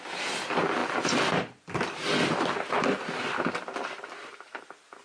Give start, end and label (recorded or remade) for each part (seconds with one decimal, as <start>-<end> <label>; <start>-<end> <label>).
0.0-5.0 recorded